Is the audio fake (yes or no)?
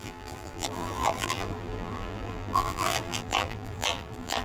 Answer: yes